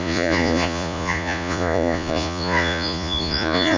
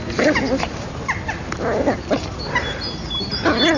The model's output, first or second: first